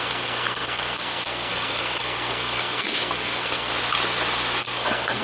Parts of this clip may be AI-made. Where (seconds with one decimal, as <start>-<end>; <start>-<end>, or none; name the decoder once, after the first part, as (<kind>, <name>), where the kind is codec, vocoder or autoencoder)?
0.0-3.7 (codec, SNAC); 4.6-5.2